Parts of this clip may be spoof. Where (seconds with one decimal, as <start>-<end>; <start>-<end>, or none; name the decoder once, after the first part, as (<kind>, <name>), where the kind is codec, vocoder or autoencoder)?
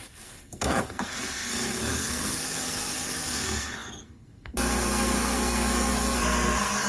0.0-6.9 (codec, SNAC)